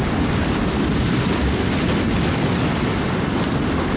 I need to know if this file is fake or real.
real